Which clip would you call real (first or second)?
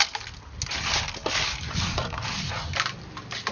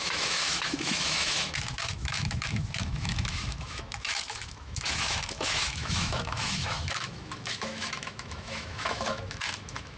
first